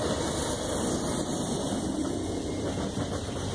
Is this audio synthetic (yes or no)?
no